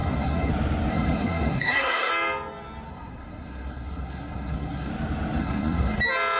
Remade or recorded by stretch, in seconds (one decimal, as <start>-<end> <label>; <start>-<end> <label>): 0.0-0.5 remade; 0.5-0.9 recorded; 0.9-2.1 remade; 2.1-2.9 recorded; 2.9-4.9 remade; 4.9-5.4 recorded; 5.4-6.0 remade; 6.0-6.4 recorded